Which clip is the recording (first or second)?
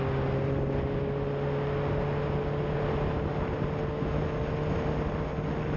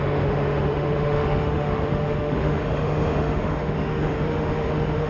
first